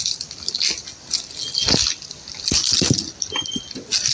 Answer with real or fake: real